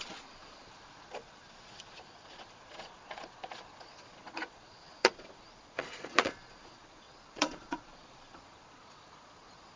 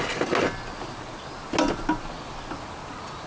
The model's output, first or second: first